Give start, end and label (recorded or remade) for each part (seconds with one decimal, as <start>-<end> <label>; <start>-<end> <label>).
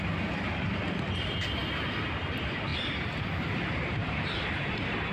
0.0-5.1 remade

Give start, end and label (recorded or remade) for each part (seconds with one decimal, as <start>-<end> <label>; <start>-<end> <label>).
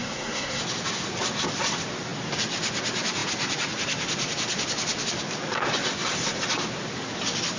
0.0-0.6 remade; 0.6-7.6 recorded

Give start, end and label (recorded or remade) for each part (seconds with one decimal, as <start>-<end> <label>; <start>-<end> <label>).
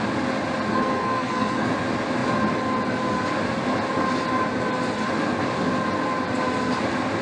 0.0-0.7 recorded; 0.7-1.7 remade; 1.7-7.2 recorded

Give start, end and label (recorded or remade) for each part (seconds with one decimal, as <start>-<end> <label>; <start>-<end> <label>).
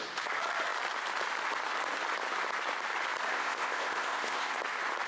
0.0-3.3 recorded; 3.3-4.6 remade; 4.6-5.1 recorded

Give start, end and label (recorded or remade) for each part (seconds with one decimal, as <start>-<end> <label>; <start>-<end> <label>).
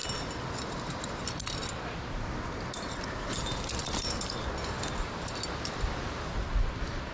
0.0-7.1 recorded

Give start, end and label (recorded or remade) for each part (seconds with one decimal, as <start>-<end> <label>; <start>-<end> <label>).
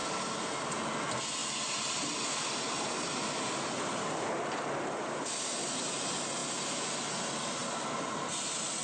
0.0-8.8 recorded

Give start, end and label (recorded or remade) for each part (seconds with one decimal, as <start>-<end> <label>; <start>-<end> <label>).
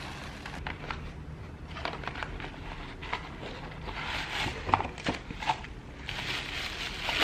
0.0-7.2 recorded